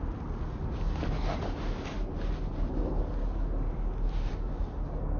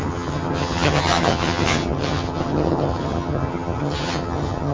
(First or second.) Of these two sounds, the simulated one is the second